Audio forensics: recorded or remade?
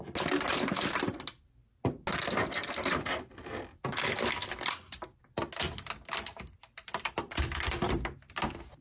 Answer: recorded